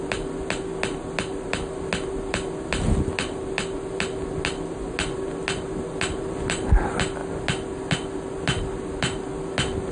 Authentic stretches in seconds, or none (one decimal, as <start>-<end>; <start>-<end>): 0.0-9.9